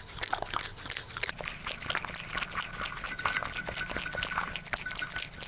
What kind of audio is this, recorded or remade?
recorded